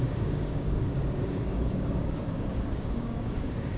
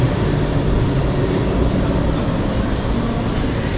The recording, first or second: second